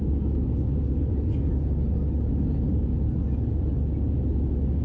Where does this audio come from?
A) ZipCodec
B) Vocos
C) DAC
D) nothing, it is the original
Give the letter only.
D